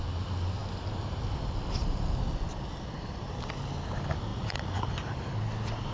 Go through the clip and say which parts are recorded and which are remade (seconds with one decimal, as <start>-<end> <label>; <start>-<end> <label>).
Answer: 0.0-4.3 recorded; 4.3-4.9 remade; 4.9-5.9 recorded